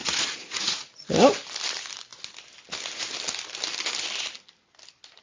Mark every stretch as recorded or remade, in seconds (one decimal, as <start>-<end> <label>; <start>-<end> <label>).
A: 0.0-1.1 remade; 1.1-5.2 recorded

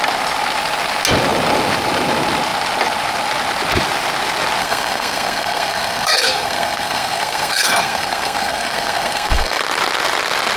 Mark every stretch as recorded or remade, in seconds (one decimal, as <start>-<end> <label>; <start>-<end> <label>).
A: 0.0-4.6 recorded; 4.6-9.6 remade; 9.6-10.6 recorded

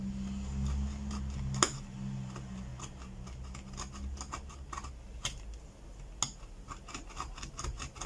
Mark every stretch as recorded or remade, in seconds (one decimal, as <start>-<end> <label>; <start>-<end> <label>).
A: 0.0-8.1 recorded

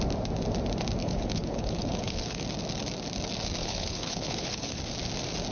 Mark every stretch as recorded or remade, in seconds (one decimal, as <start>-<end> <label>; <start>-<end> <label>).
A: 0.0-1.0 recorded; 1.0-2.4 remade; 2.4-3.6 recorded; 3.6-4.8 remade; 4.8-5.5 recorded

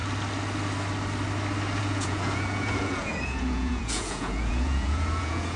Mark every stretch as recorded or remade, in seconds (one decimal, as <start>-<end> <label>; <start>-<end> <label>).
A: 0.0-1.8 recorded; 1.8-5.6 remade

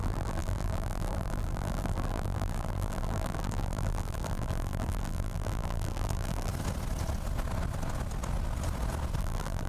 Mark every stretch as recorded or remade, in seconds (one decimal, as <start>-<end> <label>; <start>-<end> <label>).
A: 0.0-6.5 remade; 6.5-9.2 recorded; 9.2-9.7 remade